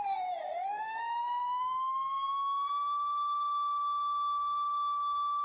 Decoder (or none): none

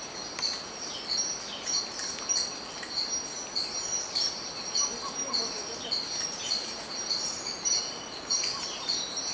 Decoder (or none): none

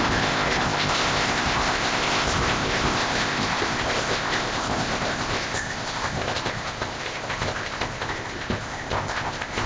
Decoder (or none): codec, ZipCodec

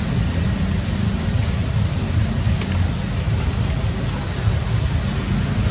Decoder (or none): none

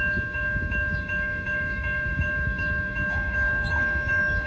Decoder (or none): autoencoder, DAC-VAE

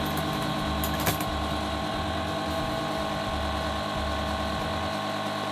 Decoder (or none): none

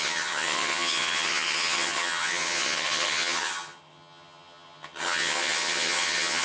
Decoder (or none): vocoder, HiFi-GAN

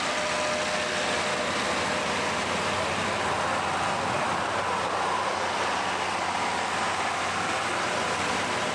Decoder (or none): none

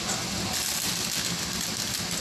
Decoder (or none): none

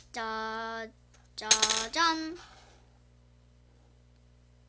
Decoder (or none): none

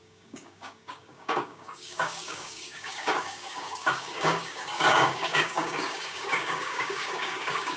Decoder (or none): codec, DAC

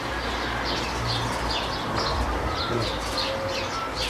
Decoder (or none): none